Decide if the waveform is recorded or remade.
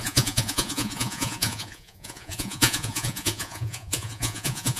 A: remade